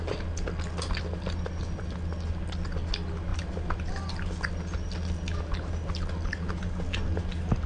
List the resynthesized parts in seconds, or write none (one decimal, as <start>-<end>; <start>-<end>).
3.3-3.9